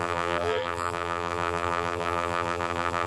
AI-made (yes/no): yes